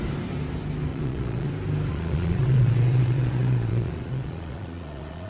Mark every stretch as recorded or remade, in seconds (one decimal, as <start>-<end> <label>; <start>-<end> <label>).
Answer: 0.0-0.9 recorded; 0.9-1.5 remade; 1.5-1.9 recorded; 1.9-5.3 remade